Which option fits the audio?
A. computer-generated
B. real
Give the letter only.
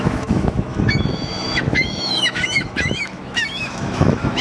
A